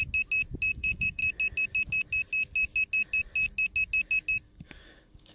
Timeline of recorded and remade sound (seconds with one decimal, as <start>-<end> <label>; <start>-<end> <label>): 0.0-0.7 recorded; 0.7-1.2 remade; 1.2-4.4 recorded; 4.4-5.3 remade